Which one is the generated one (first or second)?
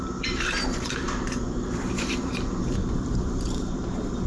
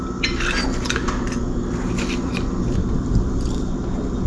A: first